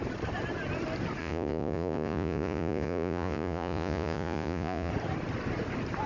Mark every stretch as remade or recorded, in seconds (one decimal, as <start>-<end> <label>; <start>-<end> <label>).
0.0-1.2 recorded; 1.2-4.9 remade; 4.9-6.1 recorded